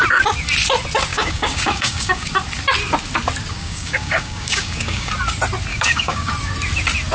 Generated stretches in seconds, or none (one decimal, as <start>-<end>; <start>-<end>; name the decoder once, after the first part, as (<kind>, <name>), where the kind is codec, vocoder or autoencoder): 1.1-2.3 (codec, DAC); 3.5-5.1; 5.7-6.3